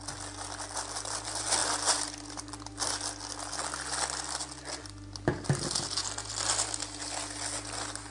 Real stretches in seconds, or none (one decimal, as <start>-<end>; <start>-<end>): 0.0-8.1